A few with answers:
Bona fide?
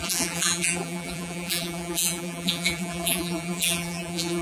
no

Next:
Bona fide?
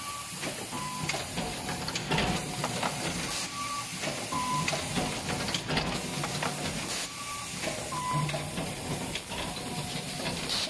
yes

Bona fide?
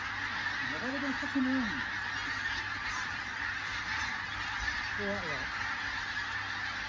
yes